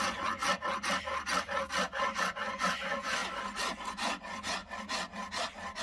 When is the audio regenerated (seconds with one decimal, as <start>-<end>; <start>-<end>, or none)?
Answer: 0.0-0.4; 2.2-3.2; 3.9-4.6